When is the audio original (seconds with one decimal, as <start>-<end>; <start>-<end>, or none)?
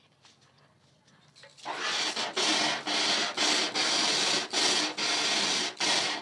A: 0.0-6.2